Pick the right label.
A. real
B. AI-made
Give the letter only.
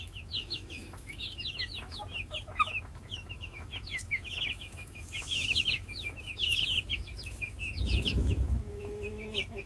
B